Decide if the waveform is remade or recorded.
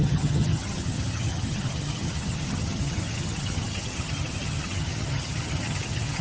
remade